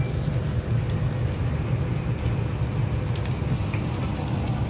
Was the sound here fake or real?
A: fake